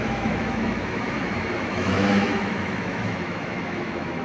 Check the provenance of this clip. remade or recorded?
remade